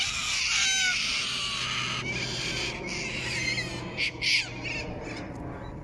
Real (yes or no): yes